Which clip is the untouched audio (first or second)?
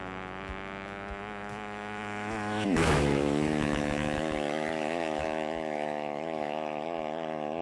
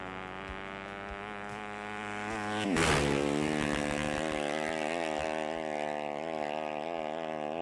second